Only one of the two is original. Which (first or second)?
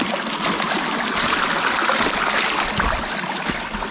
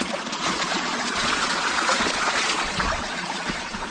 first